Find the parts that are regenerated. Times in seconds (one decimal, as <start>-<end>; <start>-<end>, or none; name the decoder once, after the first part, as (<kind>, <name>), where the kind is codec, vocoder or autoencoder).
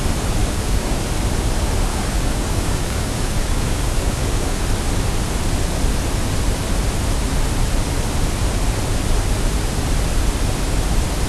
0.4-1.0 (codec, DAC); 1.9-4.6